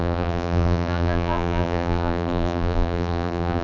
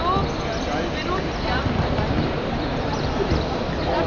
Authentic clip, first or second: second